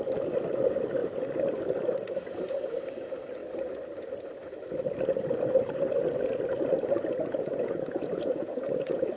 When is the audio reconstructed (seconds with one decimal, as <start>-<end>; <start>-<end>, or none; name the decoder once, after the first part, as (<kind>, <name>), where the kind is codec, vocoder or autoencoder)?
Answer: 7.3-9.2 (vocoder, Vocos)